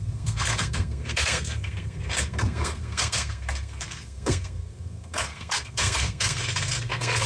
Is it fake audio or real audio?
fake